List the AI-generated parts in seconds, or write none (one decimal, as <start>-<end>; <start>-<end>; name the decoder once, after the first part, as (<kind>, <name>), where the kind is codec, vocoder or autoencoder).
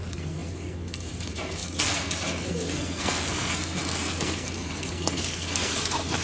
0.0-6.2 (codec, SNAC)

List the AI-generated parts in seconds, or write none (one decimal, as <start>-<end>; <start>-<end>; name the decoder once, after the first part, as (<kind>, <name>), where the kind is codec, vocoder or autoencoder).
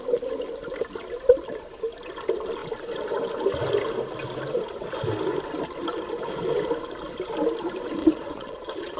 8.0-9.0 (vocoder, Vocos)